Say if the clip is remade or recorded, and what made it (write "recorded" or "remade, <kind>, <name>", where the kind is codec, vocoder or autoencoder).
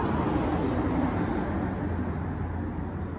recorded